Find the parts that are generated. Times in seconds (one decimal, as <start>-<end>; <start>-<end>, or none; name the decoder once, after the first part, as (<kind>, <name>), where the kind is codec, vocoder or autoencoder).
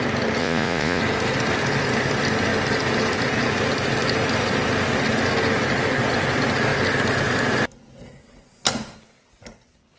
0.4-1.0 (vocoder, Vocos)